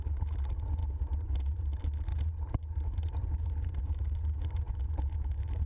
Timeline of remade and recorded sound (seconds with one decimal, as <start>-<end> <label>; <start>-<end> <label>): 0.0-0.8 recorded; 0.8-1.7 remade; 1.7-2.1 recorded; 2.1-5.7 remade